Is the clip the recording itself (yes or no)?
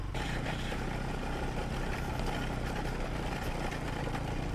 yes